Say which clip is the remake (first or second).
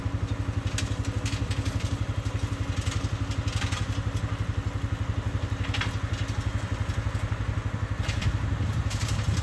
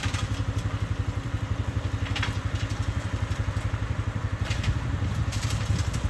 second